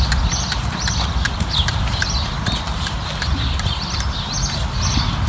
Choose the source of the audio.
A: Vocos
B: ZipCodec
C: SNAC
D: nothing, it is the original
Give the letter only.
D